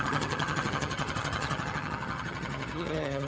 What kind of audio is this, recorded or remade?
remade